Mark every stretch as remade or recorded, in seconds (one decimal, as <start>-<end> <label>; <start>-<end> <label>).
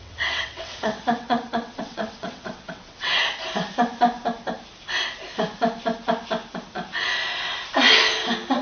0.0-3.2 remade; 3.2-8.6 recorded